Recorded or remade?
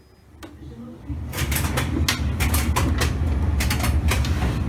recorded